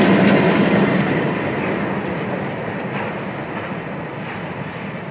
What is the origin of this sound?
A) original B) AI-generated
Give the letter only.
A